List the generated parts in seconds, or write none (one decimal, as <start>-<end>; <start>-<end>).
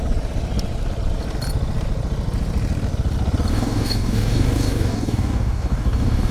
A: 3.5-6.3